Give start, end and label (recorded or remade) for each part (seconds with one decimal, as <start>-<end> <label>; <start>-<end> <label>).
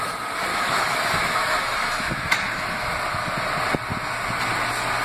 0.0-0.5 recorded; 0.5-3.0 remade; 3.0-5.0 recorded